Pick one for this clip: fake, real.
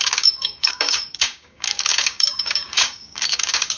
fake